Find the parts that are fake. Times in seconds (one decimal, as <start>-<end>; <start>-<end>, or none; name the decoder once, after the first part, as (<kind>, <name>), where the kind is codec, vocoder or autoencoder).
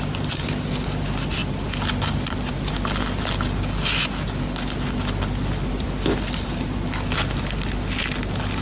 none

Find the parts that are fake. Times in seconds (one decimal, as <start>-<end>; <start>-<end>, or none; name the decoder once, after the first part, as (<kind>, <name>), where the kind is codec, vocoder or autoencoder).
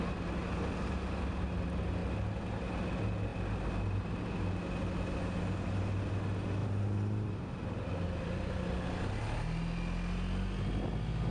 6.6-7.9 (vocoder, BigVGAN v2)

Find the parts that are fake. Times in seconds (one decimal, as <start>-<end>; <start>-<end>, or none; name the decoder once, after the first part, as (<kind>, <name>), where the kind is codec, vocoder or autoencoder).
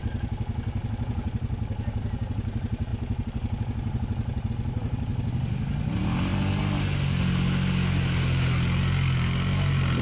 none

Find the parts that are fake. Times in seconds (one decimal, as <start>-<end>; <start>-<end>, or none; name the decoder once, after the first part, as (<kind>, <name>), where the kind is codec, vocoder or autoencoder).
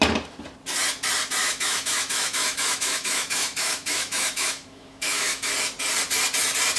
1.4-5.5 (autoencoder, DAC-VAE)